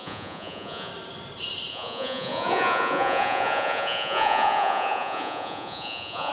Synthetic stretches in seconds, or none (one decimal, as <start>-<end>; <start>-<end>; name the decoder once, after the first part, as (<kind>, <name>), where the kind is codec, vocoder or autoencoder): 0.0-0.9 (vocoder, Vocos); 1.7-6.3